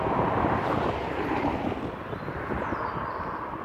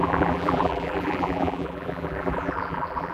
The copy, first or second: second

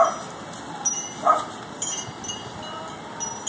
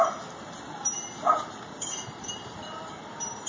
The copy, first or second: second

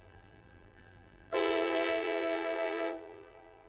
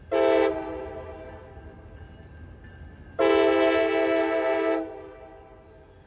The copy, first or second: first